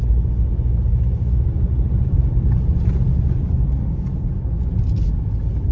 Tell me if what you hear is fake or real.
real